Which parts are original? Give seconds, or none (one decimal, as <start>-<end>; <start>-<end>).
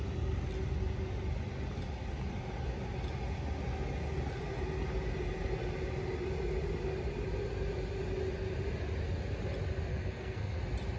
0.0-9.9; 10.6-11.0